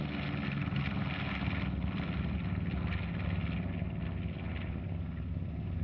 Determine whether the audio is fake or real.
real